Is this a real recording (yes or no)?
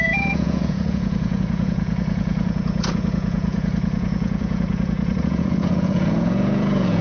no